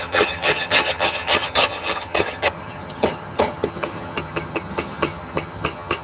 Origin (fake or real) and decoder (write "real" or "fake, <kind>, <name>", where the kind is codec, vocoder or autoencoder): fake, vocoder, HiFi-GAN